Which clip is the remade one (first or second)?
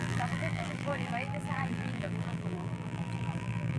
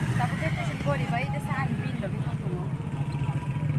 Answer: first